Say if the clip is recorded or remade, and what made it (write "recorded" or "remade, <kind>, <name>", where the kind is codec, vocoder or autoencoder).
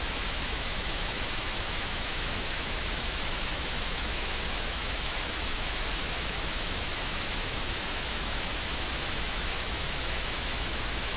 remade, autoencoder, DAC-VAE